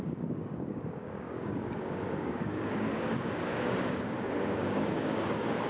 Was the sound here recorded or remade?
remade